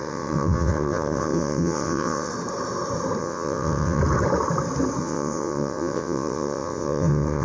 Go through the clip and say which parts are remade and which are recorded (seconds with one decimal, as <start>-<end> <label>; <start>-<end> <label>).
0.0-2.3 remade; 2.3-3.2 recorded; 3.2-4.0 remade; 4.0-5.0 recorded; 5.0-7.4 remade